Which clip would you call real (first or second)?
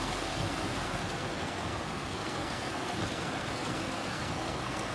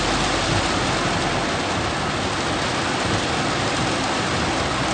second